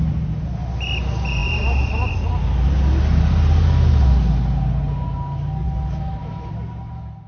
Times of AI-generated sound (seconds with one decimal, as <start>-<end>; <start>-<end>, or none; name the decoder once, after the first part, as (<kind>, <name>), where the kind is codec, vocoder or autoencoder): none